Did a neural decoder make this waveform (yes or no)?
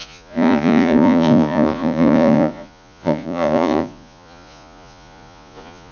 yes